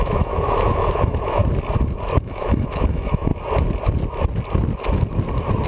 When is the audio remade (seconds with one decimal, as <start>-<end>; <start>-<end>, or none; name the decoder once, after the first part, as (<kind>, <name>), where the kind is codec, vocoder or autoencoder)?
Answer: 0.0-1.4 (autoencoder, DAC-VAE); 2.2-3.3